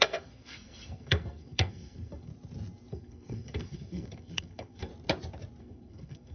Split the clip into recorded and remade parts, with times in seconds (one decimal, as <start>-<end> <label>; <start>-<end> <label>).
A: 0.0-2.3 remade; 2.3-2.9 recorded; 2.9-4.9 remade; 4.9-5.6 recorded; 5.6-6.3 remade